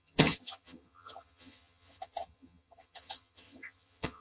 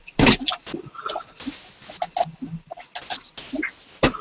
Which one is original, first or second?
second